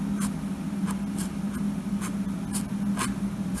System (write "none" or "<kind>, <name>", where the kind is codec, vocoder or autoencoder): none